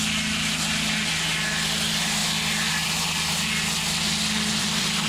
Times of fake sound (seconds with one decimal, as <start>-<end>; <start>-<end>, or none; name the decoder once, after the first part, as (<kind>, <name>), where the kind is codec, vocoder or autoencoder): none